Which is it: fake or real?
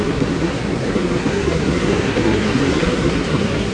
fake